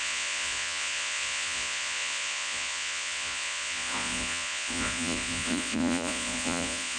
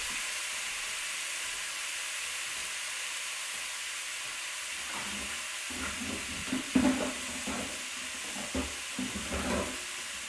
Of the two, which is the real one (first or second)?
second